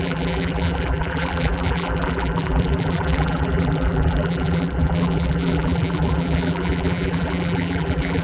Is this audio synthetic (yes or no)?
yes